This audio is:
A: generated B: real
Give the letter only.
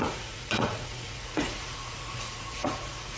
A